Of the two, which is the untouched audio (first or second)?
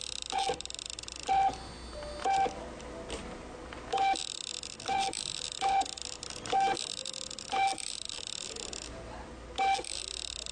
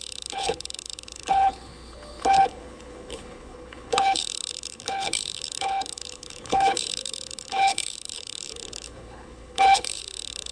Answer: first